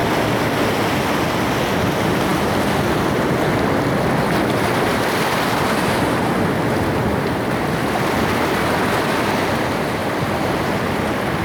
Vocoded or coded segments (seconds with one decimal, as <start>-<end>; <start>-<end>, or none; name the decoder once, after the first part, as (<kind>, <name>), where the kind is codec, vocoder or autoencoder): 2.3-3.4 (vocoder, BigVGAN v2); 4.9-6.2; 10.0-11.4

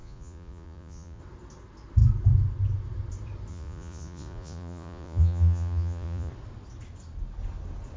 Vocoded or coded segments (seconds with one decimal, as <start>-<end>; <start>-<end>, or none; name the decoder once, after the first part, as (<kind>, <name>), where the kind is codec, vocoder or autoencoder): 0.0-1.2 (vocoder, Vocos); 3.5-6.3

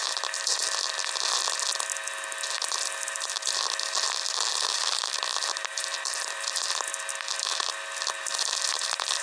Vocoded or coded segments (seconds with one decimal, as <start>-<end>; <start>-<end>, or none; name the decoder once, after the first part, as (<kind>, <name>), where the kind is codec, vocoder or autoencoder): 0.0-0.6 (vocoder, BigVGAN v2); 5.7-6.9; 8.7-9.2

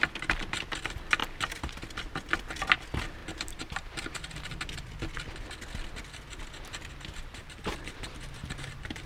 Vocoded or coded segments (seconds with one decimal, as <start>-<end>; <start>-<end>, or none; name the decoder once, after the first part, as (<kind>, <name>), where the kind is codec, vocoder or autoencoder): 3.2-4.2 (vocoder, BigVGAN v2); 7.4-9.1

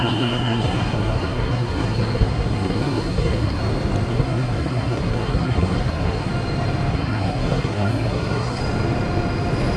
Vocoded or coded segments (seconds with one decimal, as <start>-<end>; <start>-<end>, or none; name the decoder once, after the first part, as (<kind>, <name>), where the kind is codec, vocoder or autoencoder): 0.0-3.6 (codec, SNAC); 4.1-6.3; 6.9-8.6

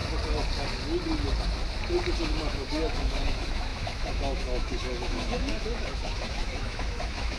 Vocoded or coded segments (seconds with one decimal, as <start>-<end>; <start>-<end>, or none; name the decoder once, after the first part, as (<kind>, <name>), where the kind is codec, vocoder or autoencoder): 2.2-7.4 (autoencoder, DAC-VAE)

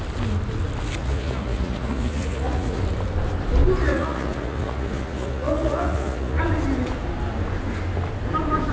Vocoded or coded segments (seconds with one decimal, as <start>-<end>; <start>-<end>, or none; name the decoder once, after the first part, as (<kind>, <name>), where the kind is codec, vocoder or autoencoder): 1.0-2.8 (vocoder, Vocos); 3.8-6.4